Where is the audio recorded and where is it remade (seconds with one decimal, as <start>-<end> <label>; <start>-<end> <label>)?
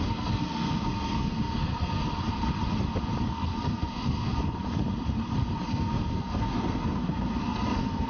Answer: 0.0-2.0 remade; 2.0-3.3 recorded; 3.3-4.3 remade; 4.3-5.7 recorded; 5.7-8.1 remade